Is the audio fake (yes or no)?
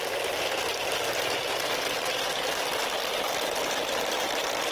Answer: no